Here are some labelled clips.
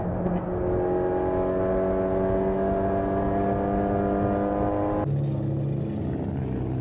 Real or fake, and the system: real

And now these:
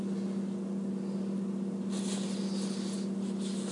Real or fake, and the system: real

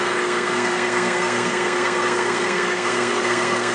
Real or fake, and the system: fake, codec, SNAC